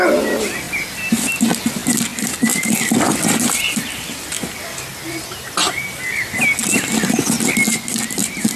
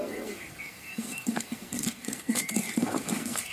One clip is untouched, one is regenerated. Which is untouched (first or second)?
first